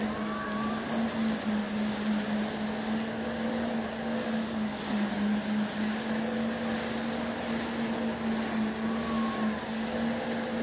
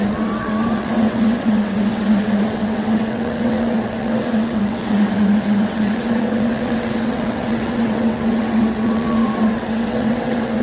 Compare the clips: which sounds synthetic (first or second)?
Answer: second